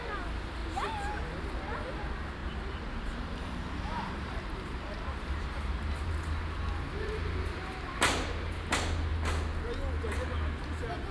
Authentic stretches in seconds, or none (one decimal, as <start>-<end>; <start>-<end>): 0.0-2.4; 6.1-11.1